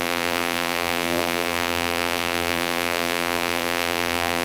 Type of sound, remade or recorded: remade